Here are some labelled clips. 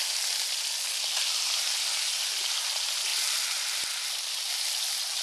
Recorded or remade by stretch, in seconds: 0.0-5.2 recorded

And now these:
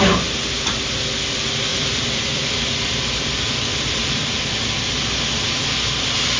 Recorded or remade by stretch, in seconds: 0.0-1.7 recorded; 1.7-2.9 remade; 2.9-3.7 recorded; 3.7-4.5 remade; 4.5-6.4 recorded

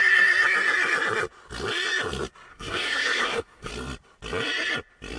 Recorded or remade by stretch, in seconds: 0.0-2.5 recorded; 2.5-3.7 remade; 3.7-5.2 recorded

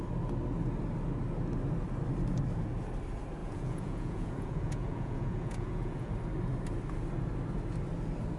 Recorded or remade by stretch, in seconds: 0.0-3.4 recorded; 3.4-6.1 remade; 6.1-8.4 recorded

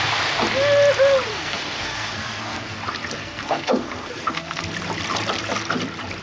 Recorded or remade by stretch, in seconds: 0.0-1.3 recorded; 1.3-2.8 remade; 2.8-3.2 recorded; 3.2-4.6 remade; 4.6-6.2 recorded